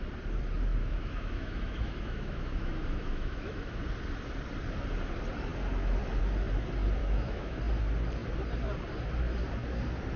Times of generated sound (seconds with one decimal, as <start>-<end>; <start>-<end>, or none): 0.8-3.8; 7.0-7.6